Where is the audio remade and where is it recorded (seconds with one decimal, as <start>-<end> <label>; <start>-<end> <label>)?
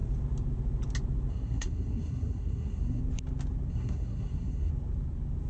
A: 0.0-1.3 recorded; 1.3-3.0 remade; 3.0-3.7 recorded; 3.7-4.7 remade; 4.7-5.5 recorded